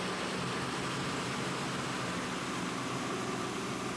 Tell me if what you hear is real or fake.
real